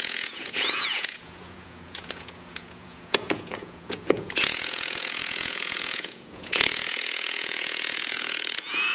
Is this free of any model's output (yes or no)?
no